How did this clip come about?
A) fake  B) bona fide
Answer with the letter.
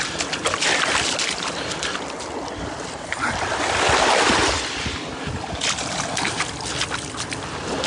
B